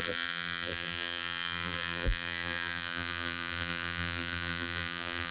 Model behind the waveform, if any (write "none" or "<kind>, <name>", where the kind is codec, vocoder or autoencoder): vocoder, BigVGAN v2